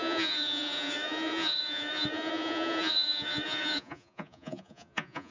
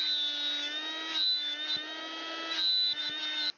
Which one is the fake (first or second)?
first